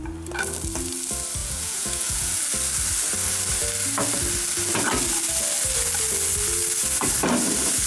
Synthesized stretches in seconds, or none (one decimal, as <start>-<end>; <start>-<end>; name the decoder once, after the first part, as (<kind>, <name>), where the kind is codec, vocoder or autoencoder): 1.4-2.4 (vocoder, Vocos)